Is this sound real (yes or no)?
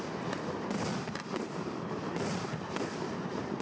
yes